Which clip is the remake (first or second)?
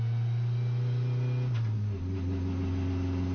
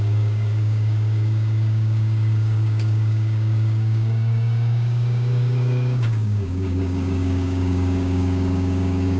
second